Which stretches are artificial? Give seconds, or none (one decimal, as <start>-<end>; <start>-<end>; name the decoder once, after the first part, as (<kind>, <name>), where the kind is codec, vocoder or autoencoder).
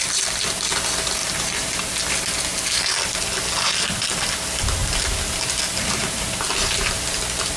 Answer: 1.2-1.8 (vocoder, BigVGAN v2)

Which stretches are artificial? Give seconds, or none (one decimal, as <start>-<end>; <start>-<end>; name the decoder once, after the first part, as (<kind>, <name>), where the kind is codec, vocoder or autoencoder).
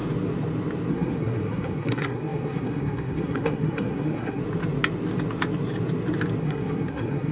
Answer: 0.9-4.4 (codec, SNAC); 6.4-7.3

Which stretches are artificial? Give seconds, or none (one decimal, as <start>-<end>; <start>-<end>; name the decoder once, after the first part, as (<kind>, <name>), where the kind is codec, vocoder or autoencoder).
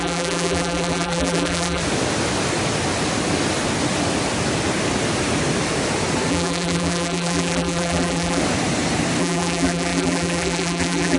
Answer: 0.0-1.8 (vocoder, BigVGAN v2); 6.3-8.4; 9.2-11.2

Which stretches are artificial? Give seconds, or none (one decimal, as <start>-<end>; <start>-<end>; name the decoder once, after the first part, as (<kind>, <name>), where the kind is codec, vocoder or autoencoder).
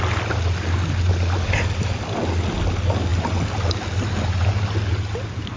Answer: none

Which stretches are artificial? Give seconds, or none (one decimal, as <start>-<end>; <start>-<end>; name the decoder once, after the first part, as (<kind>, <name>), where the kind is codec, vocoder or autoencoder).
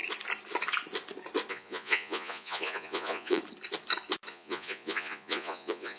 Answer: 1.5-3.4 (vocoder, Vocos); 4.3-6.0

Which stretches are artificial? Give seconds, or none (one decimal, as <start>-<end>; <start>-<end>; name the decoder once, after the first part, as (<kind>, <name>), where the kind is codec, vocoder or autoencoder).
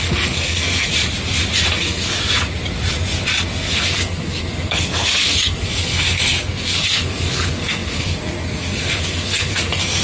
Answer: 0.0-0.9 (codec, SNAC); 1.8-2.2; 3.7-10.0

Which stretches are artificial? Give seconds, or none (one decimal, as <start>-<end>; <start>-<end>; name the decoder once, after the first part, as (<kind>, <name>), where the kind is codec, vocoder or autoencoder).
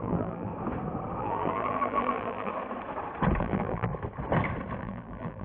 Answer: 0.0-0.5 (vocoder, BigVGAN v2); 1.2-2.5; 3.4-3.9; 4.8-5.4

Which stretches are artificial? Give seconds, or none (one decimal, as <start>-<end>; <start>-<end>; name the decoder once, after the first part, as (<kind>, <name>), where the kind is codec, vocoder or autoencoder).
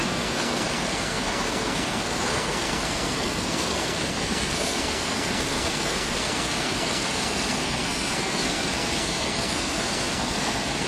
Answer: 0.0-10.9 (codec, SNAC)